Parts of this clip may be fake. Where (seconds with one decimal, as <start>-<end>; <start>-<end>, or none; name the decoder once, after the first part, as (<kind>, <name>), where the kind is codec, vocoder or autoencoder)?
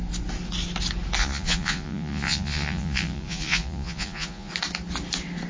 1.2-4.5 (vocoder, Vocos)